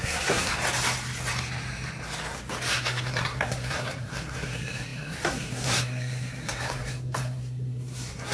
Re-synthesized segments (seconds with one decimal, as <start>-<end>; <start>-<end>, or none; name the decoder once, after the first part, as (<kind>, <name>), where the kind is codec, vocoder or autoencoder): 0.0-0.5 (codec, SNAC); 2.7-8.3